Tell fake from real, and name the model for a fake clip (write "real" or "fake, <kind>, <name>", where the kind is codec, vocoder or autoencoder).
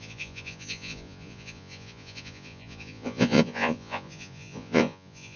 fake, vocoder, Vocos